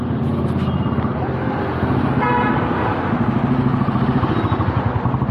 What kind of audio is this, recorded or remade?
recorded